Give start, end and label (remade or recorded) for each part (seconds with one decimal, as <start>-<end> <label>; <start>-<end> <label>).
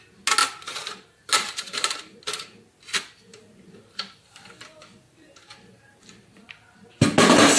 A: 0.0-0.4 recorded; 0.4-2.3 remade; 2.3-3.3 recorded; 3.3-7.6 remade